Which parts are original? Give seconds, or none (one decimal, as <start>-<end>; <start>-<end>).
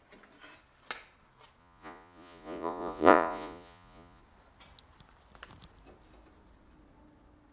0.0-1.6; 4.2-7.5